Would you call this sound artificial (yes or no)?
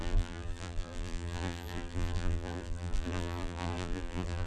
yes